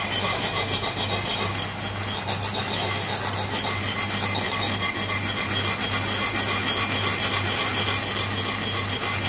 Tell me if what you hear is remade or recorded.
recorded